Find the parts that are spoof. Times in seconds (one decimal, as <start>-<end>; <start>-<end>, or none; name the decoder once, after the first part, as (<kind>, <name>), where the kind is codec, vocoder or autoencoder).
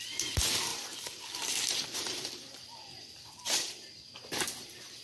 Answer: 0.7-3.7 (vocoder, BigVGAN v2)